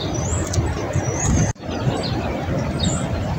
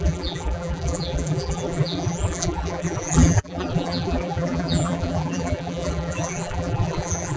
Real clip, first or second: first